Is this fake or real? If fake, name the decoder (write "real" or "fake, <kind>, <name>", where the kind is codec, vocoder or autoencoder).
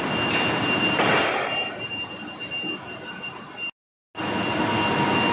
real